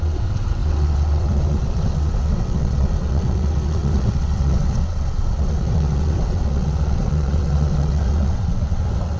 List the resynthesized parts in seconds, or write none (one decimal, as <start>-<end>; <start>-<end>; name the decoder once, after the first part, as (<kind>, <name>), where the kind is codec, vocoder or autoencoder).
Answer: 0.0-9.2 (vocoder, WaveNeXt)